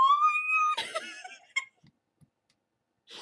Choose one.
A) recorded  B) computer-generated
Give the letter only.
A